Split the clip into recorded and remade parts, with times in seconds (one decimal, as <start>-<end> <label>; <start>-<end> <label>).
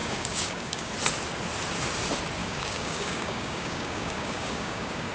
0.0-0.9 remade; 0.9-2.4 recorded; 2.4-5.1 remade